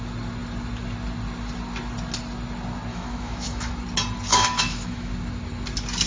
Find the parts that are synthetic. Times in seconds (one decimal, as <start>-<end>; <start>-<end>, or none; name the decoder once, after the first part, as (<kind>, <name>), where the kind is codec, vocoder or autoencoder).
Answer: 2.9-3.7 (autoencoder, DAC-VAE); 4.3-5.1